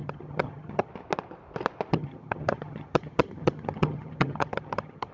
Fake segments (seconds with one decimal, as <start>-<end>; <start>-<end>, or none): 0.0-0.9; 1.9-5.1